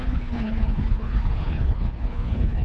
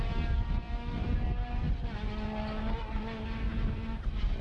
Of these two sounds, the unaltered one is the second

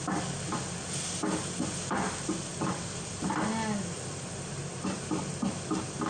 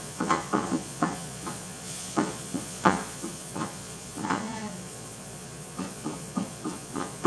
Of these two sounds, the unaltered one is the first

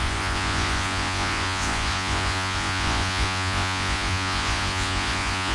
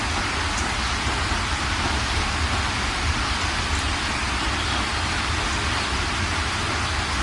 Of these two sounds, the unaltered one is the second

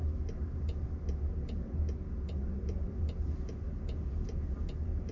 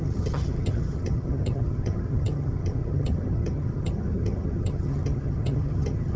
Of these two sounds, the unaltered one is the first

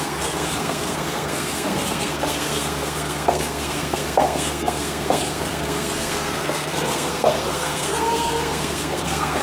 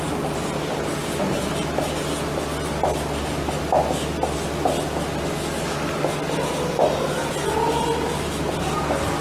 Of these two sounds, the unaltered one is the second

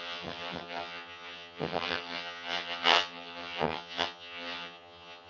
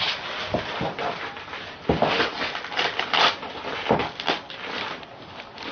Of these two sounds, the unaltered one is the second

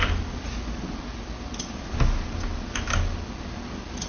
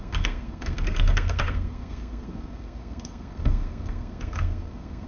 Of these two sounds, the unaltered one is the first